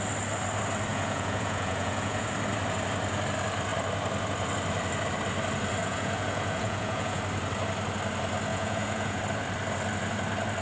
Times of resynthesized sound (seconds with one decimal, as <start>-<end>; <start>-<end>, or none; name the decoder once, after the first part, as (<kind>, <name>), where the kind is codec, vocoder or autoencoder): 0.9-2.3 (vocoder, Vocos); 5.8-7.2; 8.5-9.2